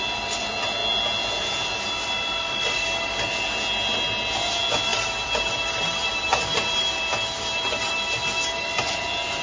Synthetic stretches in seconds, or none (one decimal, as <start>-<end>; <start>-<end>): 4.9-7.9